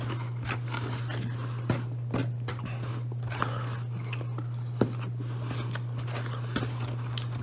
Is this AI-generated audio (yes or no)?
no